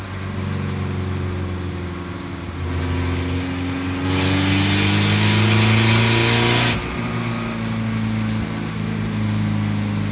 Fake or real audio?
real